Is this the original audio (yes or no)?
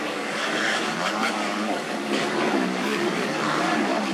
no